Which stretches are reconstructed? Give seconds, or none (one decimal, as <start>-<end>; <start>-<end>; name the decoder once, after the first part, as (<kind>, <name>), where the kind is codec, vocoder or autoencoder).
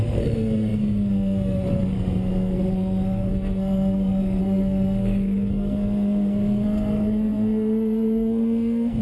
0.0-9.0 (codec, SNAC)